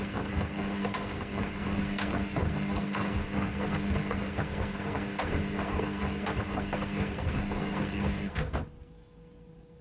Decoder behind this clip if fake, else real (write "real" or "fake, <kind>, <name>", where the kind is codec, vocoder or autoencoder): fake, codec, SNAC